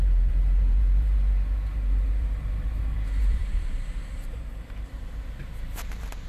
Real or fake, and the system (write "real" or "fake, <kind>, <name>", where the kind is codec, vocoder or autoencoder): fake, vocoder, BigVGAN v2